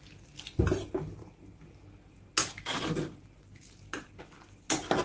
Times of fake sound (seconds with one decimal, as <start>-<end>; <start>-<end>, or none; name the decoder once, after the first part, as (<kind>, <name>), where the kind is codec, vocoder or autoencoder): none

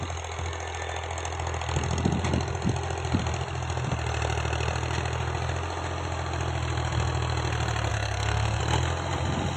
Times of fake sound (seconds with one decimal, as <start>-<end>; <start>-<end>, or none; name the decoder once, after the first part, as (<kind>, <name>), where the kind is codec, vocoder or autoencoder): 7.9-8.6 (codec, SNAC)

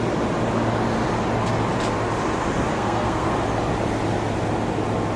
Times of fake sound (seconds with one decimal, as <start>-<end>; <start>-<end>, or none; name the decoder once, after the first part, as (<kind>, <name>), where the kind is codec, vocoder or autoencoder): 2.7-3.3 (codec, SNAC)

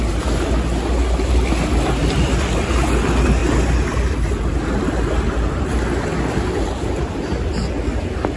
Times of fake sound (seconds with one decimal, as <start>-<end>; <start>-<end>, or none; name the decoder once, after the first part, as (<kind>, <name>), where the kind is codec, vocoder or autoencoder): none

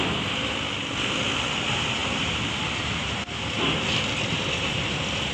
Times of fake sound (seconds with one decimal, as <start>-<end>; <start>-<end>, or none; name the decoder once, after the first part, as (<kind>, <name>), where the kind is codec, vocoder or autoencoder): none

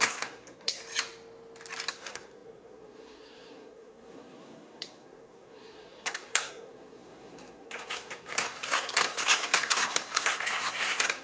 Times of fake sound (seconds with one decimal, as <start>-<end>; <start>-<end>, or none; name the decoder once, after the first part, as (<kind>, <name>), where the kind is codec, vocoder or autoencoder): 0.0-0.8 (codec, SNAC); 1.9-11.2

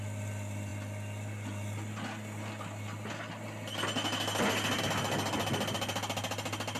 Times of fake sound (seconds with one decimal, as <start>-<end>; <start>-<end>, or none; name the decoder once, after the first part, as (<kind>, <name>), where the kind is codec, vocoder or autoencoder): none